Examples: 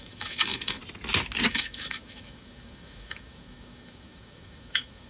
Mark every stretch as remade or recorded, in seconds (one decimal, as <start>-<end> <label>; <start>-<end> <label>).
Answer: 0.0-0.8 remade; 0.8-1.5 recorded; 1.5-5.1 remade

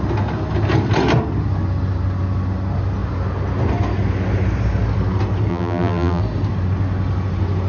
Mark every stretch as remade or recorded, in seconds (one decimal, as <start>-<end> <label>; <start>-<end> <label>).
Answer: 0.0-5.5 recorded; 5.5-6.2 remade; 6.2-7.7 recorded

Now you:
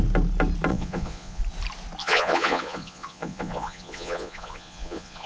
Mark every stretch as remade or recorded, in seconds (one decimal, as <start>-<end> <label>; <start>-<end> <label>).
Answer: 0.0-0.7 recorded; 0.7-1.4 remade; 1.4-2.0 recorded; 2.0-5.3 remade

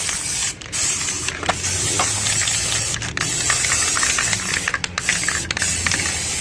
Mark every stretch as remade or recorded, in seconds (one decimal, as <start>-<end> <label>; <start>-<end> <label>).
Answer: 0.0-0.4 recorded; 0.4-1.5 remade; 1.5-6.4 recorded